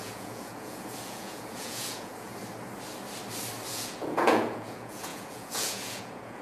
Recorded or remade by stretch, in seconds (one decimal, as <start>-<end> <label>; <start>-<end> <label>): 0.0-2.3 remade; 2.3-3.7 recorded; 3.7-6.4 remade

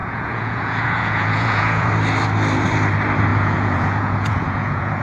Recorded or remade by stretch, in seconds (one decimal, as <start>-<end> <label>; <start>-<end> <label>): 0.0-1.9 remade; 1.9-3.3 recorded; 3.3-5.0 remade